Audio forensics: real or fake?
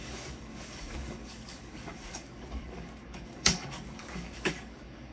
fake